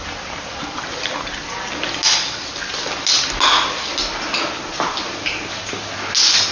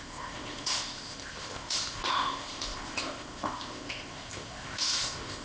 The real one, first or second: first